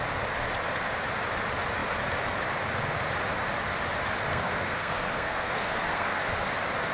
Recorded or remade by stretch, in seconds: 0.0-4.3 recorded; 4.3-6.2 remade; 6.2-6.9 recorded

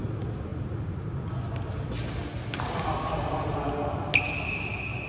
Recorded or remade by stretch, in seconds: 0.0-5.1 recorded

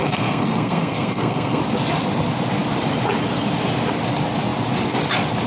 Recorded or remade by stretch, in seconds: 0.0-1.6 remade; 1.6-5.5 recorded

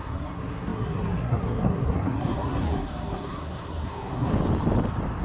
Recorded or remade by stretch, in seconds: 0.0-4.3 remade; 4.3-5.2 recorded

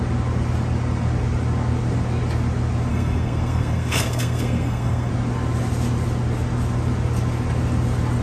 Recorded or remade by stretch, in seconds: 0.0-2.9 recorded; 2.9-5.1 remade; 5.1-8.2 recorded